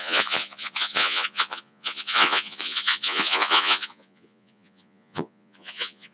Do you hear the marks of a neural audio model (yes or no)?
yes